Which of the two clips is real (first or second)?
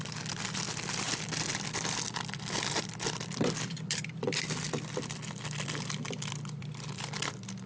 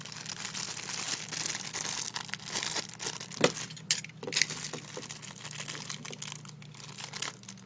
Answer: second